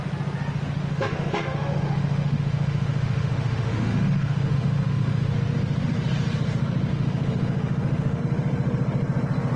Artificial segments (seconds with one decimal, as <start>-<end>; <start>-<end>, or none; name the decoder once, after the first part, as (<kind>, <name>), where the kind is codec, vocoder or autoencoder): 0.8-5.3 (autoencoder, DAC-VAE); 6.9-8.2